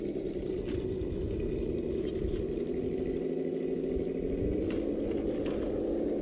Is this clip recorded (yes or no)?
yes